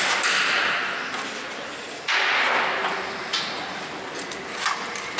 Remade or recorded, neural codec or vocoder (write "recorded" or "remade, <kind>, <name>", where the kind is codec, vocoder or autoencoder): recorded